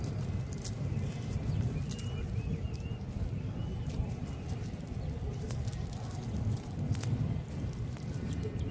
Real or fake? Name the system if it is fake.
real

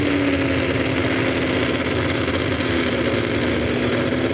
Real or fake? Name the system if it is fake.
real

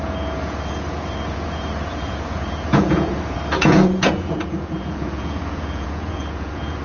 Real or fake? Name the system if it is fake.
fake, vocoder, Vocos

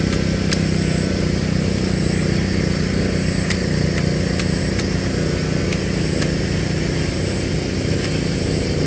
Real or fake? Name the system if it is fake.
real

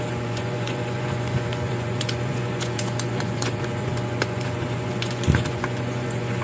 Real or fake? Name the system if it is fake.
fake, vocoder, Vocos